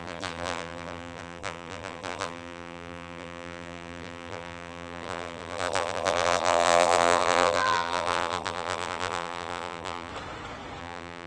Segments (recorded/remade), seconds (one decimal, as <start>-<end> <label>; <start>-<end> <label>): 0.0-10.1 remade; 10.1-10.8 recorded; 10.8-11.3 remade